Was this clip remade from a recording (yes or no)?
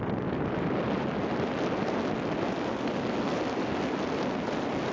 no